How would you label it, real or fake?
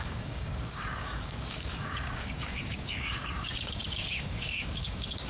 fake